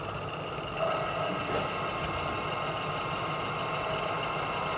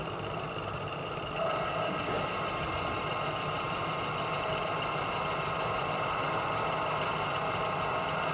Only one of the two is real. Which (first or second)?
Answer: first